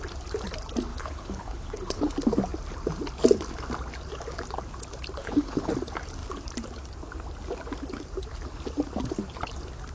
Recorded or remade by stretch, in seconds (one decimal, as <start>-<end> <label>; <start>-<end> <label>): 0.0-0.9 recorded; 0.9-2.0 remade; 2.0-5.2 recorded; 5.2-5.7 remade; 5.7-9.9 recorded